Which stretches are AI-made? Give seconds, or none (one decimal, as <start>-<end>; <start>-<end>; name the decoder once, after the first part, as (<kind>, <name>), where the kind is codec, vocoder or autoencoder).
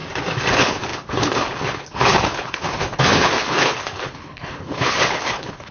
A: 0.5-5.7 (codec, HILCodec)